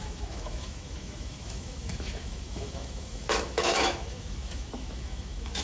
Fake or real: fake